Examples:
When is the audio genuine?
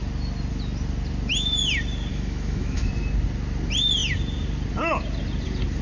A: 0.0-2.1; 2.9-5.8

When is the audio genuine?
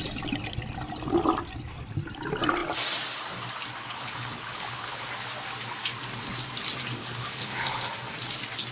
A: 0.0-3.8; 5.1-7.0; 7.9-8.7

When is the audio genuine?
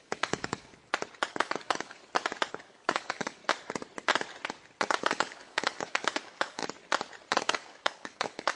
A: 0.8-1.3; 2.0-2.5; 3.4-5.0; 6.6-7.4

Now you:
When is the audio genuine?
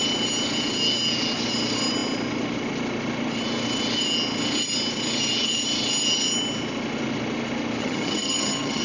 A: 0.0-7.8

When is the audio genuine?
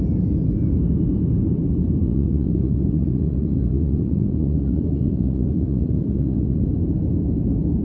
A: 0.0-2.0; 6.7-7.8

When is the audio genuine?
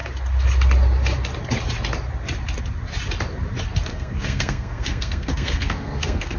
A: 0.0-3.9